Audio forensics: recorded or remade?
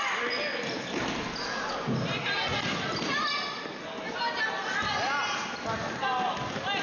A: recorded